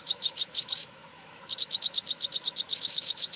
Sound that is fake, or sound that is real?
fake